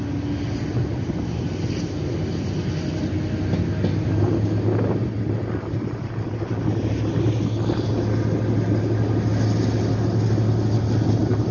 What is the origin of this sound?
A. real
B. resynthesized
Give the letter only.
A